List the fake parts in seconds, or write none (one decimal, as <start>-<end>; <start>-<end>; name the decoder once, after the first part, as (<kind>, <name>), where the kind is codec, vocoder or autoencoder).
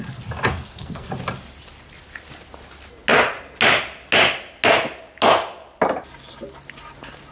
0.5-1.1 (codec, SNAC)